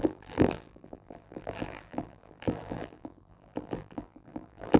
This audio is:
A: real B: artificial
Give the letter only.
B